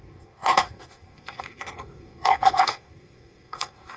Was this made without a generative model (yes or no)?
no